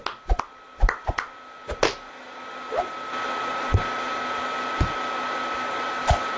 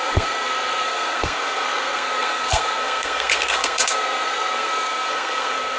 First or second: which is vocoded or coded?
second